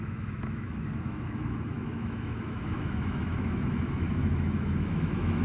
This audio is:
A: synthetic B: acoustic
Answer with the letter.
A